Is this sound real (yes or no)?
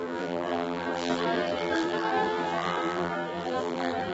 no